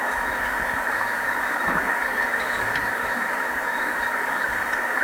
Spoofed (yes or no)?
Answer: yes